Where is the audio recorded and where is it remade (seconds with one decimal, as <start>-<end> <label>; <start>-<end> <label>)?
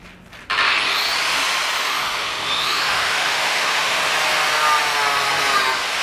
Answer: 0.0-1.8 recorded; 1.8-4.0 remade; 4.0-6.0 recorded